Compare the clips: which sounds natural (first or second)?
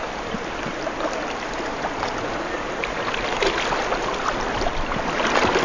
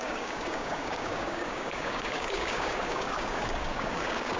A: first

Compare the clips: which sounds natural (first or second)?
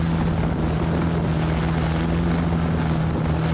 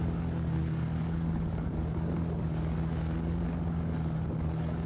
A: first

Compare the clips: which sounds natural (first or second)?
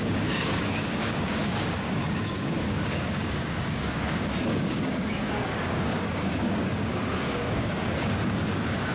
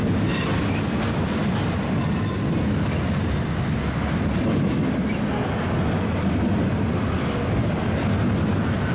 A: second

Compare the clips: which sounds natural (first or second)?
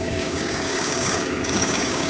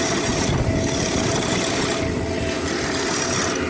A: second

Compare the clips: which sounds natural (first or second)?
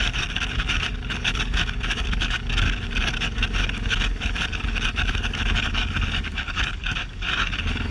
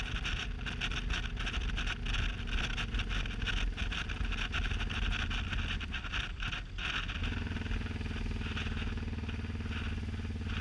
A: second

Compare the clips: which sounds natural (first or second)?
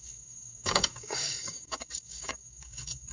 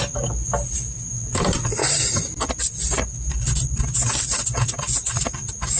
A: second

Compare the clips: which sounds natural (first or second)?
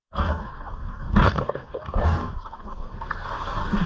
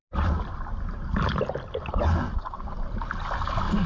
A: second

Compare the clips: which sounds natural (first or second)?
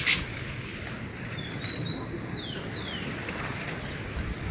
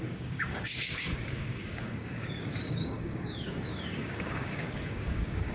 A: first